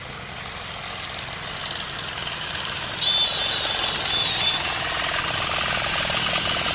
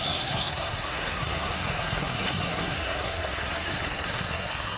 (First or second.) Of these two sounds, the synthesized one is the second